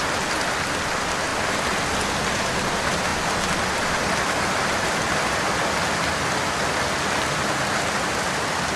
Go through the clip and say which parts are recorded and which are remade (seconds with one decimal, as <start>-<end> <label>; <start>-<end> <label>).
0.0-8.8 recorded